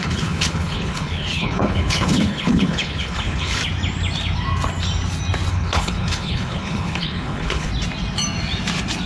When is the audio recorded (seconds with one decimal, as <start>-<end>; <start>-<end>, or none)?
3.6-5.5; 7.7-9.1